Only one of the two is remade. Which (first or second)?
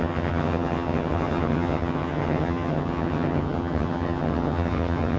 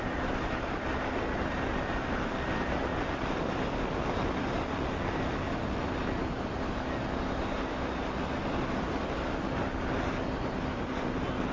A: first